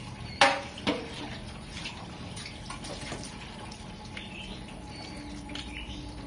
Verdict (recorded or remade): remade